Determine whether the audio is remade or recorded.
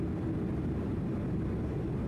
recorded